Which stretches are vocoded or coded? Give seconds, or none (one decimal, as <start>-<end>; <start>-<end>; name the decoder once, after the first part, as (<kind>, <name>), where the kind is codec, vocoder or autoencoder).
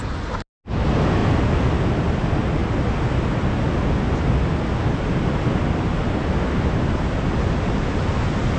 none